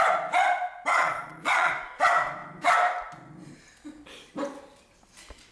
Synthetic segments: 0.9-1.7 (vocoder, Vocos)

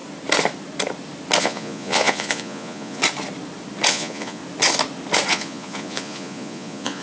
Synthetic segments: 1.4-3.0 (vocoder, Vocos); 3.9-4.4; 5.3-7.0

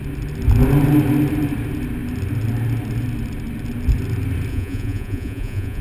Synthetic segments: 4.5-5.8 (vocoder, Vocos)